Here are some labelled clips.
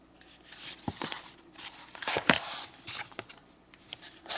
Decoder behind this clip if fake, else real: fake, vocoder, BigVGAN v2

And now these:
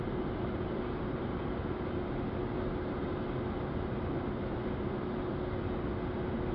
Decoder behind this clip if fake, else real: real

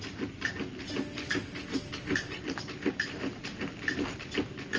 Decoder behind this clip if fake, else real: real